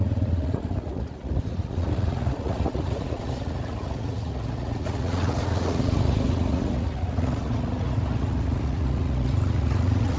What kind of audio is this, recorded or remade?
remade